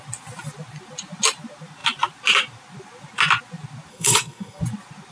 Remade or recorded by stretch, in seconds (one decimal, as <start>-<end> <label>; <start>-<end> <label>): 0.0-3.9 recorded; 3.9-4.6 remade; 4.6-5.1 recorded